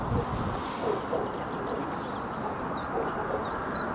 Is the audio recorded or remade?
recorded